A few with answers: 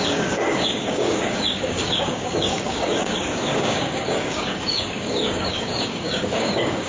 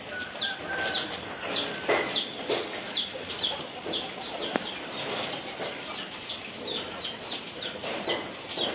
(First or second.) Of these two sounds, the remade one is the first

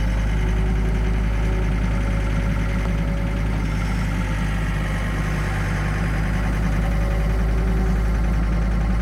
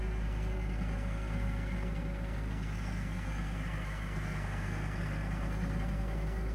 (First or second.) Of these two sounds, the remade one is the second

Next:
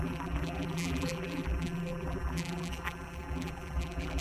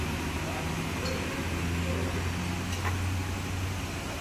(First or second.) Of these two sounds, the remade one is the first